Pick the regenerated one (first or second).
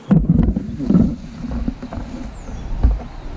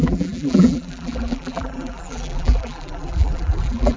second